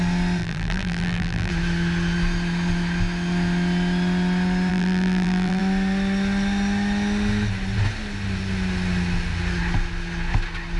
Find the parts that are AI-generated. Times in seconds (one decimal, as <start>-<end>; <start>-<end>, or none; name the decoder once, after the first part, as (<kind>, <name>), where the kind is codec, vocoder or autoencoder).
0.4-1.5 (vocoder, BigVGAN v2); 4.7-5.6